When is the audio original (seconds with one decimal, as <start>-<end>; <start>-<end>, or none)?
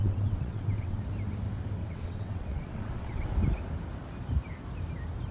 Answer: 1.0-1.8; 3.3-5.3